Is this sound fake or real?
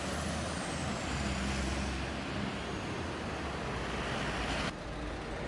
real